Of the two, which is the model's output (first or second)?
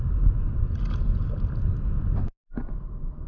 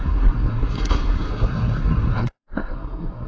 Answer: second